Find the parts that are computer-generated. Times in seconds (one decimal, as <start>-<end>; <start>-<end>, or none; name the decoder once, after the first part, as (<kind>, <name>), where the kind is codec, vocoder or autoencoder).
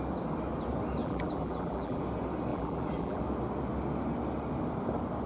1.0-2.0 (vocoder, BigVGAN v2); 2.5-3.2